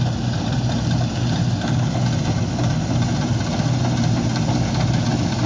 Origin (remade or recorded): recorded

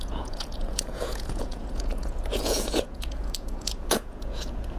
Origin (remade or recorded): remade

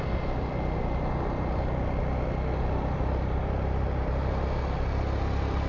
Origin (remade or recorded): recorded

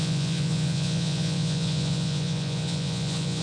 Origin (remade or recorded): remade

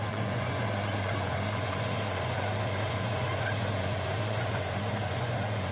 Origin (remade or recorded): remade